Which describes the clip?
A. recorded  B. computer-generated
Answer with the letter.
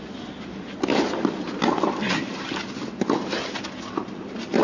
A